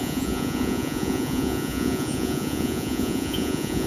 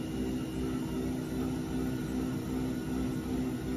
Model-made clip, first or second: first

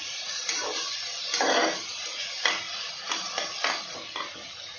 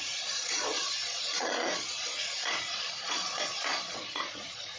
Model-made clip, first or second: second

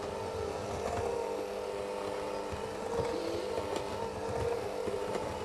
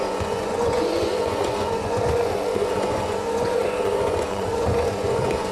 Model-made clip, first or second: second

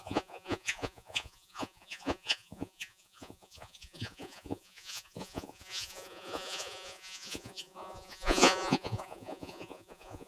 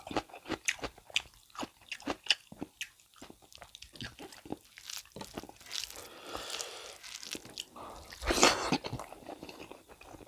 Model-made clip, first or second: first